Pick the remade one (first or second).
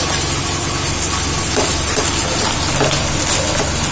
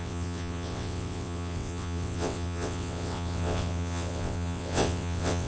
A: second